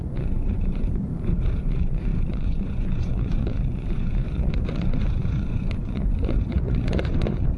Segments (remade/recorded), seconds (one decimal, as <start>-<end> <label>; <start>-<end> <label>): 0.0-1.1 remade; 1.1-1.6 recorded; 1.6-7.6 remade